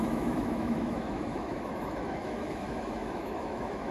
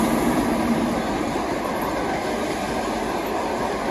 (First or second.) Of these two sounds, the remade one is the first